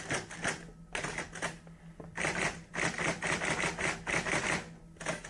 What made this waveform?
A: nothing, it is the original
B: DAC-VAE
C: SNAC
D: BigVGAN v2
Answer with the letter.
A